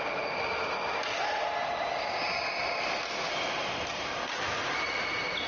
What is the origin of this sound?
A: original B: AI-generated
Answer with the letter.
A